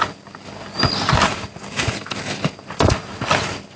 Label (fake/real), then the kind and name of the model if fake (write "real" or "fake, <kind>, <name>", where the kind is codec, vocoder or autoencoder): real